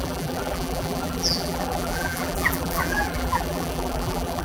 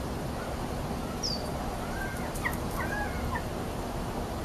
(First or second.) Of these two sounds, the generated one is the first